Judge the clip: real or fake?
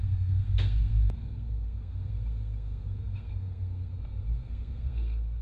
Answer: fake